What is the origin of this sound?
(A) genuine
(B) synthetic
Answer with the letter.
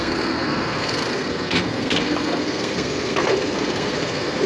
B